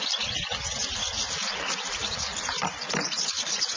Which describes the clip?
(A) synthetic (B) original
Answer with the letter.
B